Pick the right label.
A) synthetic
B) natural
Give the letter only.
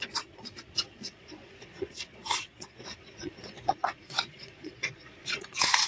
A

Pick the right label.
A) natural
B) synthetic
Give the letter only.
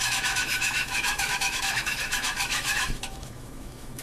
B